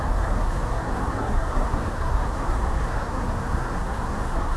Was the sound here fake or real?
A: fake